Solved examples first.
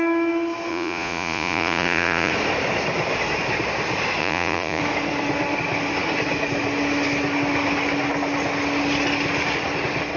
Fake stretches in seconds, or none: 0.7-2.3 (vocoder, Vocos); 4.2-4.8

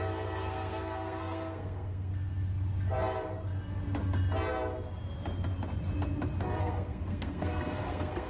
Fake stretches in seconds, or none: 0.0-2.1 (codec, SNAC); 6.6-8.3

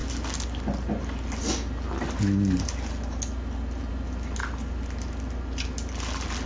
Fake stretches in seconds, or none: none

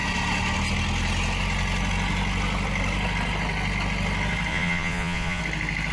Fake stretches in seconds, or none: 4.5-5.4 (vocoder, Vocos)

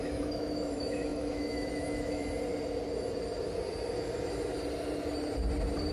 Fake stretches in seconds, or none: 0.0-2.2 (autoencoder, DAC-VAE)

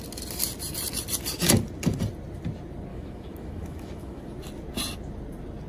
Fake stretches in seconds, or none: 2.9-4.3 (autoencoder, DAC-VAE)